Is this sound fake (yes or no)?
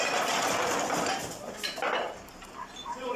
no